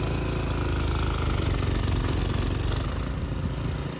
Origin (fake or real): real